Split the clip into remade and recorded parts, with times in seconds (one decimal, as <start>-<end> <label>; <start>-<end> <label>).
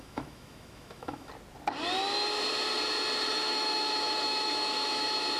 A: 0.0-1.3 remade; 1.3-3.3 recorded; 3.3-5.4 remade